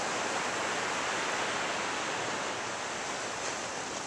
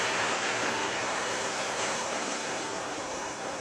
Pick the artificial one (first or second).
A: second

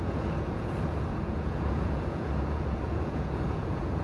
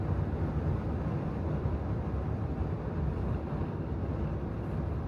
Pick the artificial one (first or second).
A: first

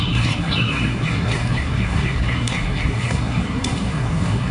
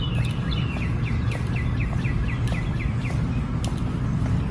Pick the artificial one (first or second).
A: first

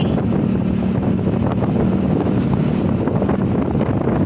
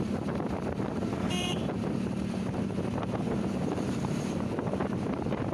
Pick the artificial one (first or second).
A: second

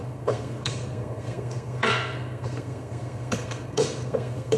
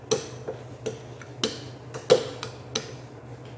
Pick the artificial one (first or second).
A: first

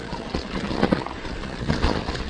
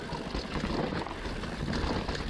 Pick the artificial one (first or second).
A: first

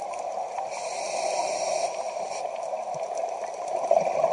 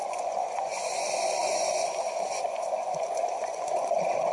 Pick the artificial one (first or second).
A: second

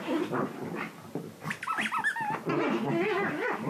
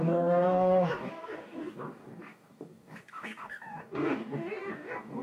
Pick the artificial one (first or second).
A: second